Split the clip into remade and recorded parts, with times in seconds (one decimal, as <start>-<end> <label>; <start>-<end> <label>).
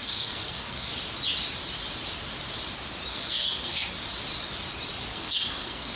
0.0-0.9 remade; 0.9-3.1 recorded; 3.1-3.9 remade; 3.9-5.1 recorded; 5.1-6.0 remade